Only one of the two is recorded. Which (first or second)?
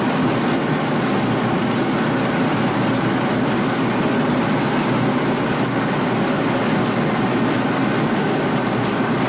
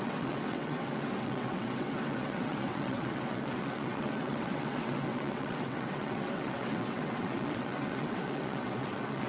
first